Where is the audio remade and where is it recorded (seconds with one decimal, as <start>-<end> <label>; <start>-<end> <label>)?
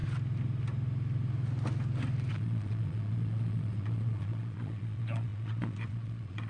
0.0-2.3 recorded; 2.3-6.5 remade